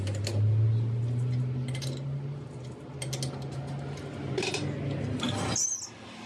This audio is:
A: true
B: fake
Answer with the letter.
A